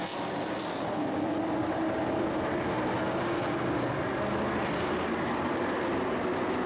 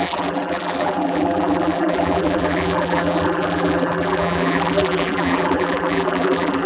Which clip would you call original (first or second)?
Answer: first